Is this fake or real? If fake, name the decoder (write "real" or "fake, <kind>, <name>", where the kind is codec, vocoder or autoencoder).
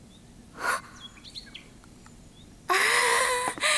real